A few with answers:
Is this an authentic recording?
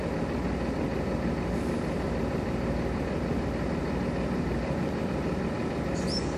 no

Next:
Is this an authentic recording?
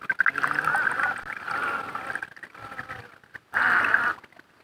yes